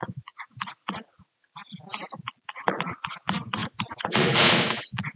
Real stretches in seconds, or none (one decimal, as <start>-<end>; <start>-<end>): 1.6-2.3; 3.6-4.1